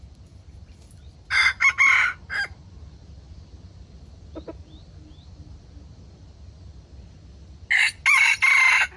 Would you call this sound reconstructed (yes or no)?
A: no